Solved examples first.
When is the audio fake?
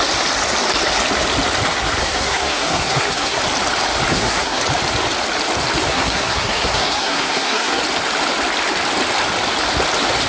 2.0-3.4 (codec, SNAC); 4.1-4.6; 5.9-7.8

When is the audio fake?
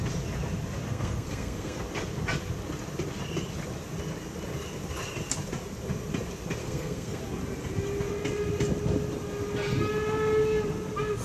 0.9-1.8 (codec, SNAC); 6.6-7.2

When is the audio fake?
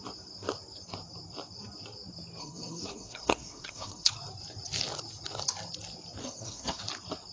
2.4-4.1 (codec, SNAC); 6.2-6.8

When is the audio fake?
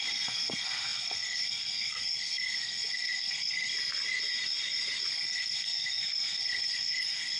0.0-3.7 (codec, SNAC); 5.1-7.4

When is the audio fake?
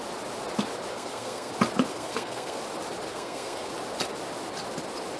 0.9-1.5 (codec, SNAC); 1.9-2.6; 3.1-3.7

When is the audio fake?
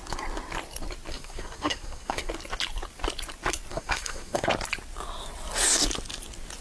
1.1-2.3 (codec, SNAC); 3.7-4.5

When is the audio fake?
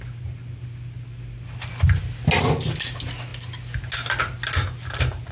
none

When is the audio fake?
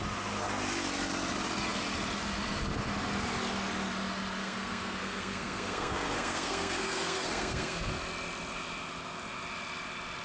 4.4-7.9 (codec, SNAC)